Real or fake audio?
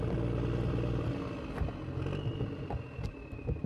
real